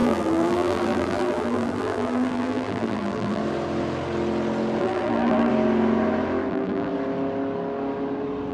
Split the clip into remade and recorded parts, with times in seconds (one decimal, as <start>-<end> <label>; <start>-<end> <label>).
0.0-3.4 remade; 3.4-4.8 recorded; 4.8-5.5 remade; 5.5-6.5 recorded; 6.5-6.9 remade; 6.9-8.5 recorded